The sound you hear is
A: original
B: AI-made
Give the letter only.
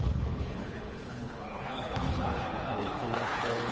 B